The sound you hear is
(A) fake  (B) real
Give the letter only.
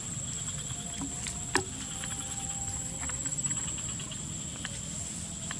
B